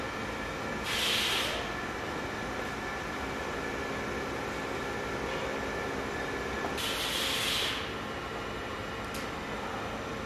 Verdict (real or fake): real